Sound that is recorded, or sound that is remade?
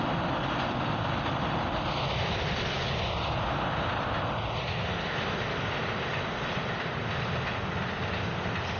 recorded